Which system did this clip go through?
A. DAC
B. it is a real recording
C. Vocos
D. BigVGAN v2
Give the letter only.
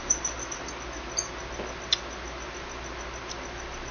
B